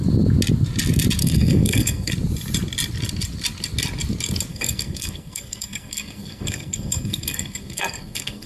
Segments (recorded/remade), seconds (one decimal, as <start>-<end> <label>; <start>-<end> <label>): 0.0-1.2 recorded; 1.2-2.1 remade; 2.1-4.5 recorded; 4.5-8.5 remade